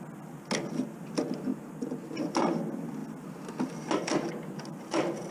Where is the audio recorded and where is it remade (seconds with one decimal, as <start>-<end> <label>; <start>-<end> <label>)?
0.0-1.5 recorded; 1.5-2.1 remade; 2.1-5.3 recorded